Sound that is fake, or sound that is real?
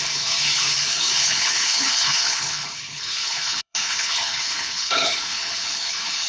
fake